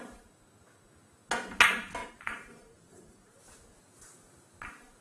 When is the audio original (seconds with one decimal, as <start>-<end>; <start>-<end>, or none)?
0.0-2.0; 3.4-5.0